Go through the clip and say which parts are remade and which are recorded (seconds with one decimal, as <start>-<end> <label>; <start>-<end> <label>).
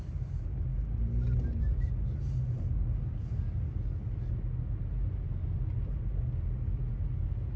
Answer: 0.0-7.6 recorded